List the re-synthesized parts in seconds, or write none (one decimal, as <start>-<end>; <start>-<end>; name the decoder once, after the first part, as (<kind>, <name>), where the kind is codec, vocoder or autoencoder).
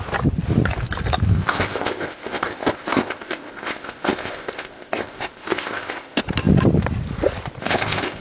1.3-6.2 (codec, ZipCodec); 7.6-8.2